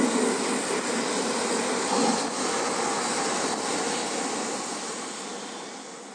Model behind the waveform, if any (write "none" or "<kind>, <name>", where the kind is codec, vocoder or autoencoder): none